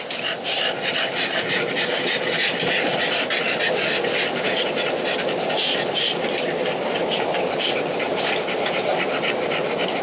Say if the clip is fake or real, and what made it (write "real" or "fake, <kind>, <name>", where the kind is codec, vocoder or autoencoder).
real